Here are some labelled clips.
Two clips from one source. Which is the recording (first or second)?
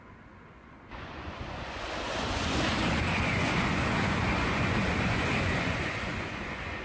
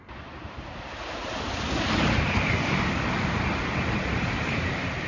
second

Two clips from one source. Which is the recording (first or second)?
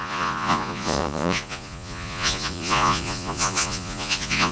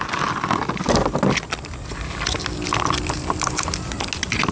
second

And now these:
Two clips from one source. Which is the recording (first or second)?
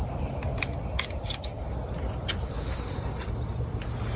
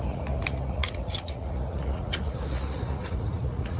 first